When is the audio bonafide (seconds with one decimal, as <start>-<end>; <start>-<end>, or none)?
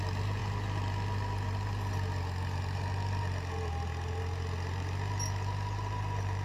0.0-6.4